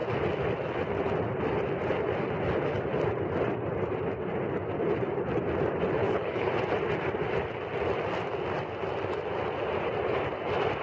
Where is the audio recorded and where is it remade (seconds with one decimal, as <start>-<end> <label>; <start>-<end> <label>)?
0.0-6.0 recorded; 6.0-6.5 remade; 6.5-10.8 recorded